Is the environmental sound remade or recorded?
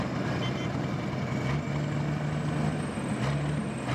recorded